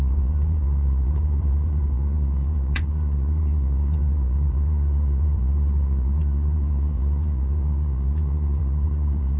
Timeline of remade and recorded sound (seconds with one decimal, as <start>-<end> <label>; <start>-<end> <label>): 0.0-9.4 remade